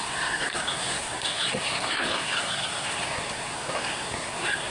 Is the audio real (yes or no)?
no